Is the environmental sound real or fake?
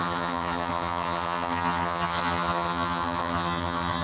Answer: fake